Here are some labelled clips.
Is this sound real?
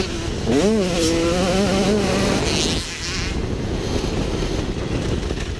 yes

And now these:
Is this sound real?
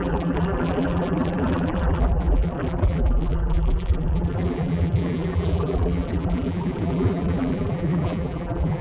no